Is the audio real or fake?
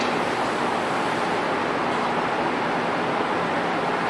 real